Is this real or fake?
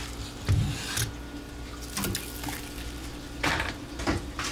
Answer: real